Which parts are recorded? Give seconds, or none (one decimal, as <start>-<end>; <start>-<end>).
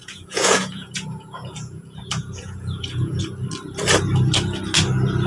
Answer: 3.2-5.3